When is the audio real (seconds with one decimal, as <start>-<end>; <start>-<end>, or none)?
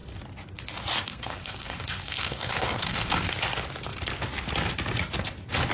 0.0-1.1; 3.3-5.7